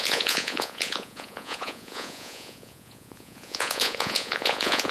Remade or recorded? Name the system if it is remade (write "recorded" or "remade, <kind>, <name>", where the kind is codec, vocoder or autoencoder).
remade, vocoder, Vocos